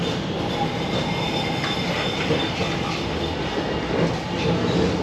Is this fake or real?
real